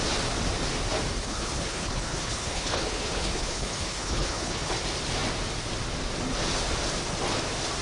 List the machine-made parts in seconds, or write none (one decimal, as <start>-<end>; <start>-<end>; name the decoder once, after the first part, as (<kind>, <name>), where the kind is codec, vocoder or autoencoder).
1.2-4.7 (codec, HILCodec)

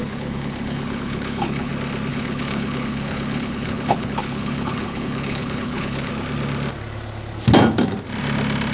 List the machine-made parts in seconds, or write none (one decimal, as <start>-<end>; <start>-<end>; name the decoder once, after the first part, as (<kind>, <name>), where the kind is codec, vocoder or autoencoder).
0.0-1.7 (codec, HILCodec); 2.1-6.1